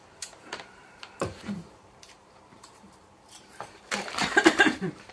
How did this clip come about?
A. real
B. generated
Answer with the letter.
B